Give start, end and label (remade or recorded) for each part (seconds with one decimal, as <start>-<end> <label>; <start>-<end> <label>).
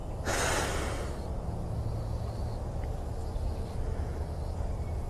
0.0-5.1 recorded